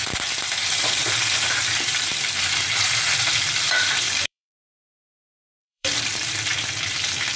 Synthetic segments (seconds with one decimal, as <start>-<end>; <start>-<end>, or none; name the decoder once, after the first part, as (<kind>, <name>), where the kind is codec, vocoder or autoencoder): 0.0-1.0 (vocoder, BigVGAN v2); 1.5-6.5